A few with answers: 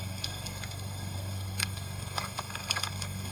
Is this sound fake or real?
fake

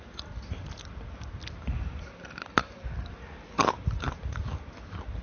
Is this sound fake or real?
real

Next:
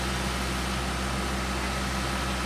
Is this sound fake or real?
real